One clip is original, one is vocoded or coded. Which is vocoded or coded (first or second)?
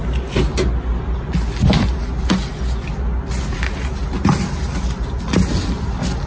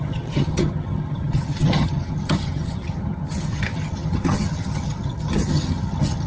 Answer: second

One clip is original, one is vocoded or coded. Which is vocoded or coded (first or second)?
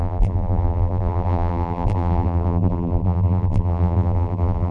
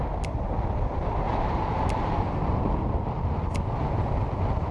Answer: first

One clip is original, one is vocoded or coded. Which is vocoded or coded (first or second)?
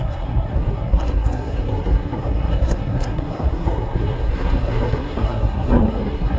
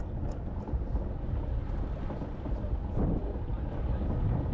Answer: first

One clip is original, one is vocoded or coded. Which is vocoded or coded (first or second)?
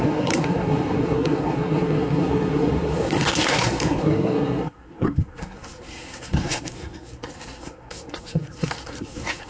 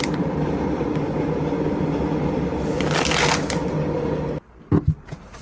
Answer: first